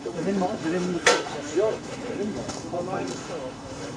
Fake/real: fake